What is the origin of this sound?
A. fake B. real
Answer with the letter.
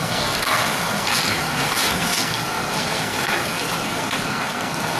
A